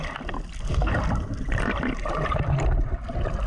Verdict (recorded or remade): recorded